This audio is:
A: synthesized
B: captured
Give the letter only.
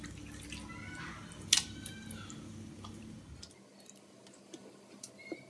B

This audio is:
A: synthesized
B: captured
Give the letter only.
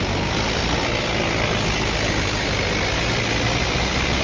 B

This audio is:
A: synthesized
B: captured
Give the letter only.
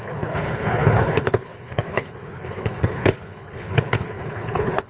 A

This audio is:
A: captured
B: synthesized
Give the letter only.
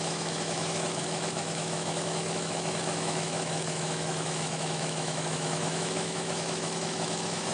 B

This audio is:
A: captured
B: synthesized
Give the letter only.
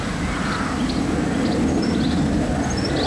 A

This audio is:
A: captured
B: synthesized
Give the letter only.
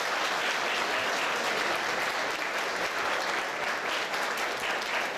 A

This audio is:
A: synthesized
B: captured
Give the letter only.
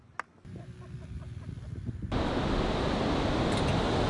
B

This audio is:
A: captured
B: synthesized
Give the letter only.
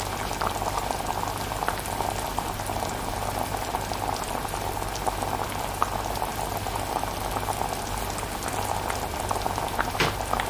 A